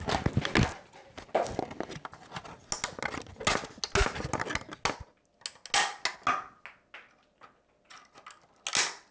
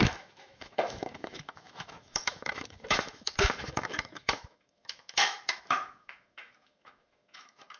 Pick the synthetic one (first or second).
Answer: second